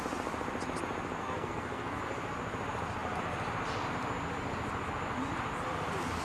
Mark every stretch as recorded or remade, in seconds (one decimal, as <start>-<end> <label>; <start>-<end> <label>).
0.0-1.2 recorded; 1.2-2.0 remade; 2.0-6.2 recorded